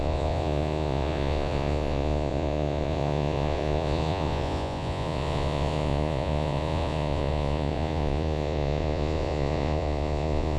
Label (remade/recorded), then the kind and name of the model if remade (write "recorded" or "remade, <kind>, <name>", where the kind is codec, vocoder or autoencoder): remade, vocoder, Vocos